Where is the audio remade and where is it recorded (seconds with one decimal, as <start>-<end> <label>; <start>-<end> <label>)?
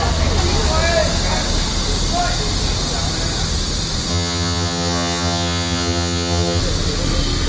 0.0-4.1 recorded; 4.1-6.6 remade; 6.6-7.5 recorded